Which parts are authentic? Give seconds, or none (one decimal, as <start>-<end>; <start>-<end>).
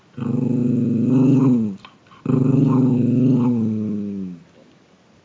0.0-5.2